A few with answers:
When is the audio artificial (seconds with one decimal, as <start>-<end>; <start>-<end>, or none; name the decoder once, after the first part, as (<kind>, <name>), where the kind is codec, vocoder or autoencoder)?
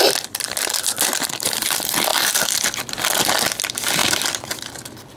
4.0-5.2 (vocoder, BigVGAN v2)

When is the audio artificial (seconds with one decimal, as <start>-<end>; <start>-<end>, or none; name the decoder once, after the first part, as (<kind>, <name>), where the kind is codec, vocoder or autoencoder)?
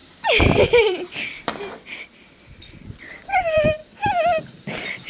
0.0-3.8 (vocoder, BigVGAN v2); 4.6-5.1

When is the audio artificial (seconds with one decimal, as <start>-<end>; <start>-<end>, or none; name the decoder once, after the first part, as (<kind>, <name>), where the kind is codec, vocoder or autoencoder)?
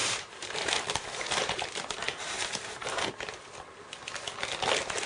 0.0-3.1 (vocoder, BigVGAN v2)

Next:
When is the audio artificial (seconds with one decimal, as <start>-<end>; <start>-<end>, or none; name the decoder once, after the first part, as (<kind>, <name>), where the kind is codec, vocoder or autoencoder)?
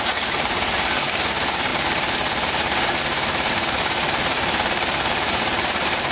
0.0-6.1 (vocoder, BigVGAN v2)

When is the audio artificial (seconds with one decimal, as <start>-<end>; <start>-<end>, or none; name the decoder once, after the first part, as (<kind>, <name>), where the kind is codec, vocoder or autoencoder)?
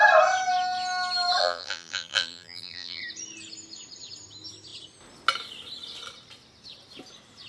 1.4-3.0 (vocoder, BigVGAN v2)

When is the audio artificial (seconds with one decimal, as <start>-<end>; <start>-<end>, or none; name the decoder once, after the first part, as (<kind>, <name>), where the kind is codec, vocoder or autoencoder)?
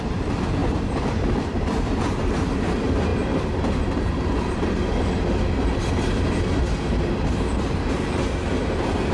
0.0-9.1 (vocoder, BigVGAN v2)